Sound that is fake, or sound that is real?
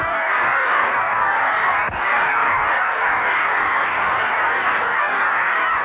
fake